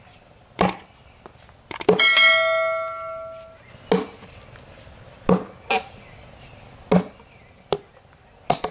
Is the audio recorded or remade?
recorded